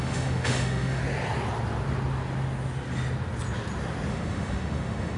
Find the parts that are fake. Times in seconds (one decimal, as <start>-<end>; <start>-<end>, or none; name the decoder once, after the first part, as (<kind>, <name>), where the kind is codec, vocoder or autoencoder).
0.0-1.0 (autoencoder, DAC-VAE); 4.1-5.2